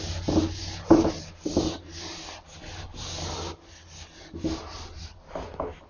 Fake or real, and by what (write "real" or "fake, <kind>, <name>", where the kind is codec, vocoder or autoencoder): real